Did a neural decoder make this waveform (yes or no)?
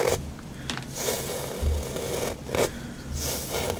no